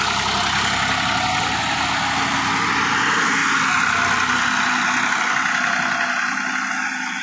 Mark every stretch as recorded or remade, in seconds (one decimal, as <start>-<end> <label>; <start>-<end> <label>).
0.0-7.2 recorded